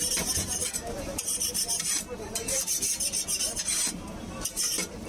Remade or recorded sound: remade